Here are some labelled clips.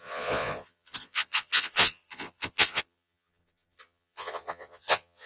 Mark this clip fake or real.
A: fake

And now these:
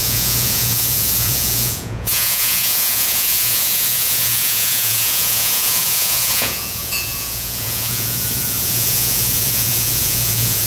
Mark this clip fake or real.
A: fake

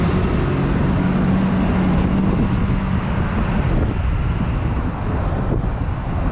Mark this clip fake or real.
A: real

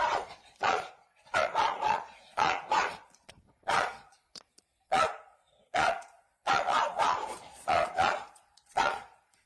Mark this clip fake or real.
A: fake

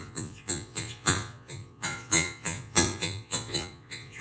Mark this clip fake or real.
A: fake